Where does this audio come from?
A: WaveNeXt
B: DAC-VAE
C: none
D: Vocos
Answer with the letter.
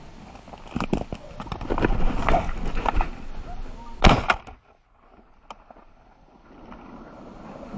C